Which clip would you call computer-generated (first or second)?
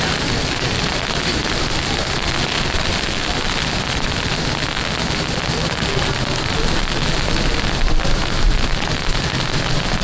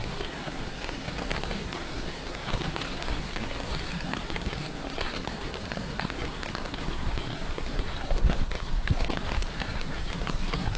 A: second